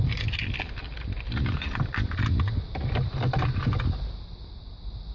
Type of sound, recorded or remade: remade